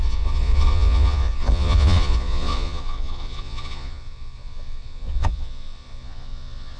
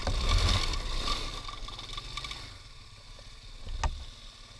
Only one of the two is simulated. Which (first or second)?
first